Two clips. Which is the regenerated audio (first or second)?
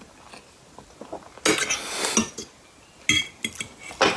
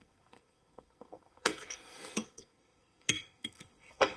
second